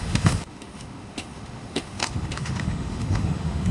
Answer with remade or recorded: remade